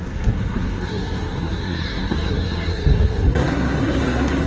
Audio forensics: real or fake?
fake